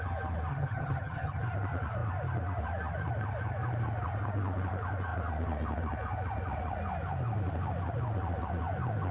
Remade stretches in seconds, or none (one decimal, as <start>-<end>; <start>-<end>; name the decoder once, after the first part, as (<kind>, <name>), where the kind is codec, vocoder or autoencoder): 0.5-1.4 (vocoder, HiFi-GAN)